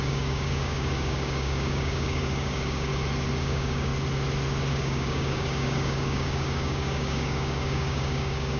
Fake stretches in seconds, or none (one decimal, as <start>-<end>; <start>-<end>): 0.0-2.9; 3.4-3.9; 4.7-8.6